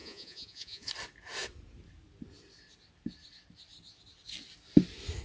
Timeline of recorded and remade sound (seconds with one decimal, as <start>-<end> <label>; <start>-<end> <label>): 0.0-0.9 remade; 0.9-5.2 recorded